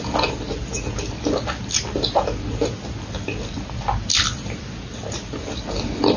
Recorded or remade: recorded